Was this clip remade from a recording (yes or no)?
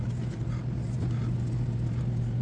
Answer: no